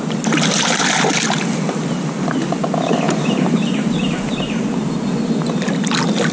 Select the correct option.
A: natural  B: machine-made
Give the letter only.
A